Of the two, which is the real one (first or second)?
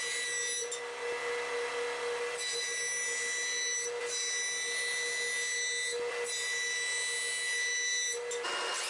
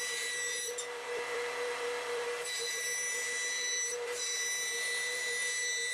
first